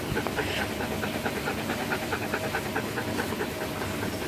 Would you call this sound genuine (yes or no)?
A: yes